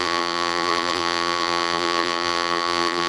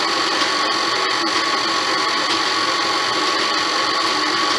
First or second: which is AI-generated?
first